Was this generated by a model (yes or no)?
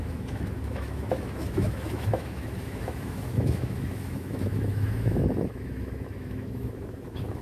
yes